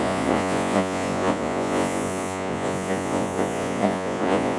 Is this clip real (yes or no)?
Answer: no